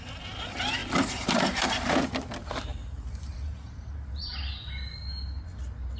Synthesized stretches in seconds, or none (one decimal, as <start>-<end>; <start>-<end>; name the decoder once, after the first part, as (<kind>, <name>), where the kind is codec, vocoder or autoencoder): 0.8-1.9 (vocoder, BigVGAN v2); 2.7-4.2